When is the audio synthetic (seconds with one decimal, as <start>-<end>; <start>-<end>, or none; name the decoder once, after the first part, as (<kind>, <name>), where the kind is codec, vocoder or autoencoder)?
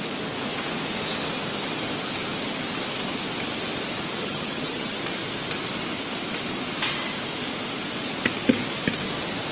4.2-5.0 (vocoder, HiFi-GAN)